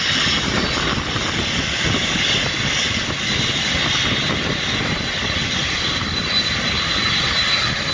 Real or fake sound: real